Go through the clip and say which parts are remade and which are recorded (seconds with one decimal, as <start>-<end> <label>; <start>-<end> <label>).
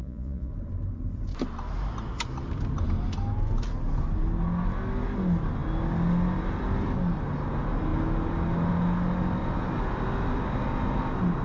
0.0-0.5 remade; 0.5-11.4 recorded